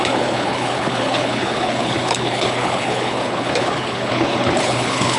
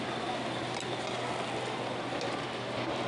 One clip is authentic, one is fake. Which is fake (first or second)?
first